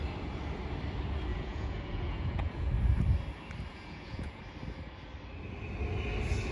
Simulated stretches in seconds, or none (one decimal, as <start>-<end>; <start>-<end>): 1.3-2.7; 3.7-4.4